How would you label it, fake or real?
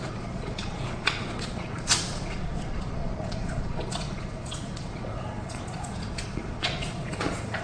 fake